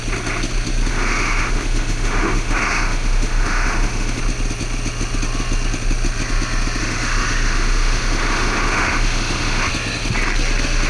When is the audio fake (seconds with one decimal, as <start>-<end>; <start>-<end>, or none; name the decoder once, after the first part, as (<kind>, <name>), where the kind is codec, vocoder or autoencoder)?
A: 0.9-4.2 (autoencoder, DAC-VAE); 6.8-9.7